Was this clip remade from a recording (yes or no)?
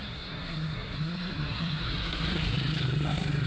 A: yes